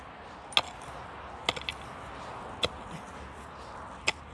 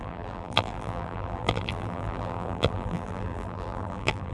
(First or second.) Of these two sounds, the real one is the first